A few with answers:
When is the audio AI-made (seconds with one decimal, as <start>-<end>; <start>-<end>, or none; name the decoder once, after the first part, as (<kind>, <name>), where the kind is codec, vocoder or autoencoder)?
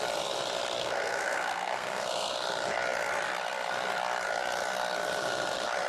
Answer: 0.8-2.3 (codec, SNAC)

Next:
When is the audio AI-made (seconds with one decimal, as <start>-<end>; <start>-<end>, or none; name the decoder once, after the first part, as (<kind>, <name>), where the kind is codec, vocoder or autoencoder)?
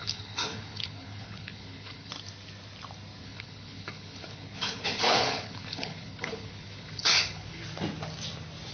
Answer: 0.0-2.1 (codec, HILCodec); 3.2-7.6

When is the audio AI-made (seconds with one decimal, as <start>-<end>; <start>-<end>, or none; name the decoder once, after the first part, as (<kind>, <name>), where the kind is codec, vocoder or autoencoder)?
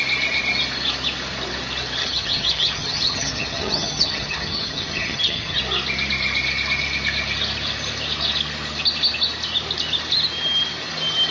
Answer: 2.0-5.6 (vocoder, HiFi-GAN)